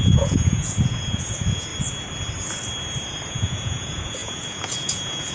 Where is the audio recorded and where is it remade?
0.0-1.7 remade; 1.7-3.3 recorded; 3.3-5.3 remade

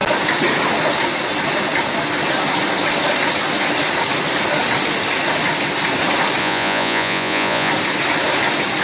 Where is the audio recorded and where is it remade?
0.0-6.4 recorded; 6.4-7.7 remade; 7.7-8.8 recorded

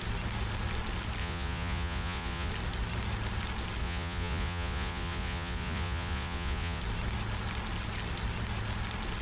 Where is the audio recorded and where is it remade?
0.0-1.2 recorded; 1.2-2.5 remade; 2.5-3.8 recorded; 3.8-6.8 remade; 6.8-9.2 recorded

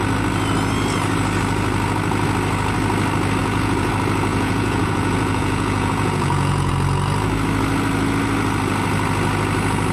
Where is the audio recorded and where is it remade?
0.0-3.4 recorded; 3.4-3.9 remade; 3.9-4.3 recorded; 4.3-6.7 remade; 6.7-9.9 recorded

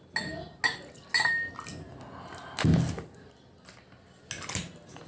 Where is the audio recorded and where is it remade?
0.0-5.1 recorded